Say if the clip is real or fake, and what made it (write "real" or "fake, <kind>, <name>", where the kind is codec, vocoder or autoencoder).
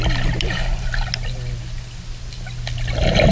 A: real